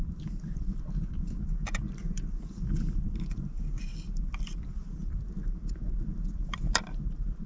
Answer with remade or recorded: remade